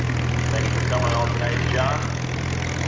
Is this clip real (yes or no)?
yes